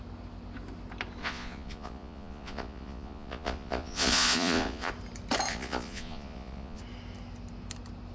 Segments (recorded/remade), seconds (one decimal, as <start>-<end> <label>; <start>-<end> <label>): 0.0-1.2 recorded; 1.2-4.9 remade; 4.9-5.5 recorded; 5.5-6.8 remade; 6.8-8.1 recorded